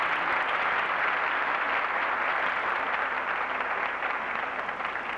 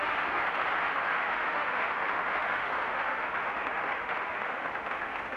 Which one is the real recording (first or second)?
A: first